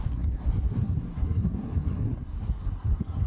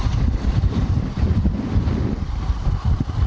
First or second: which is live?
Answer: second